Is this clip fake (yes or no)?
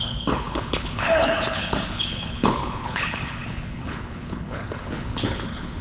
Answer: yes